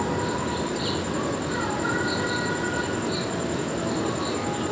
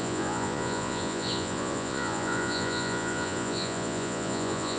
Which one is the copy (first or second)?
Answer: second